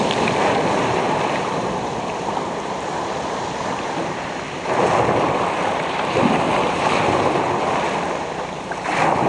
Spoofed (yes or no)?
yes